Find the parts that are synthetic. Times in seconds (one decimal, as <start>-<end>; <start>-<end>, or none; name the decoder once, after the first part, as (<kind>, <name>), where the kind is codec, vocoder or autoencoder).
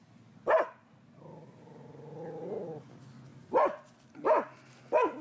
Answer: none